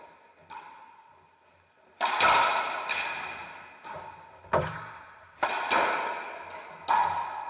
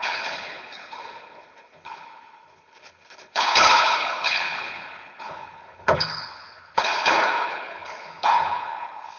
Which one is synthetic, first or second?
second